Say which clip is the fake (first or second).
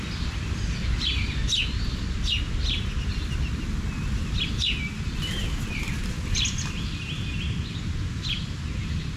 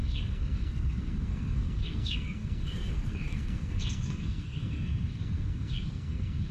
second